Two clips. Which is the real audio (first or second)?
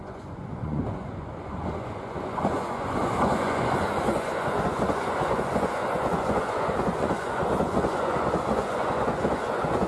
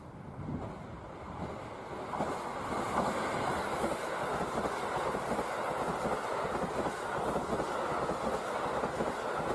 second